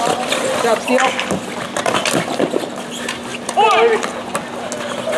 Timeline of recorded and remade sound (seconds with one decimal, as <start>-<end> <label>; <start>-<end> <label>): 0.0-5.2 recorded